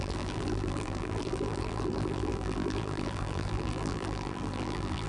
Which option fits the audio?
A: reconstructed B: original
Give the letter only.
A